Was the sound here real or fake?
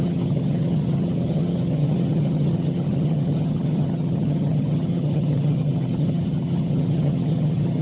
fake